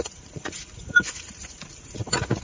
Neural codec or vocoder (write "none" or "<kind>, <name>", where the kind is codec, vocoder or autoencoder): vocoder, Vocos